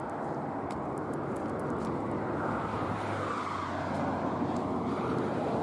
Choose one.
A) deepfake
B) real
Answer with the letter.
B